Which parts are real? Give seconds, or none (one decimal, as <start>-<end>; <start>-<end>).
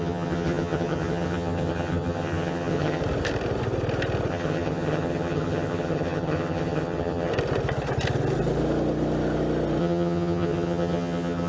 3.0-4.3; 7.3-9.8